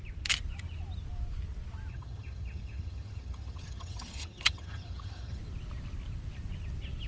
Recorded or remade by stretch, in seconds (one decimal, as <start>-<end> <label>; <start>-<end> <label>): 0.0-1.9 recorded; 1.9-5.4 remade; 5.4-7.1 recorded